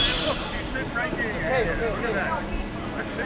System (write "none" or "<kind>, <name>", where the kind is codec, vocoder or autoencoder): none